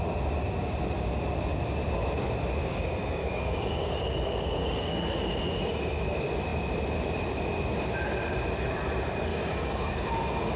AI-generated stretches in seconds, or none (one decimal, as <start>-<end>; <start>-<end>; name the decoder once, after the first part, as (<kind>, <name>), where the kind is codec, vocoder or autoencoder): 2.6-5.4 (codec, DAC); 9.3-10.1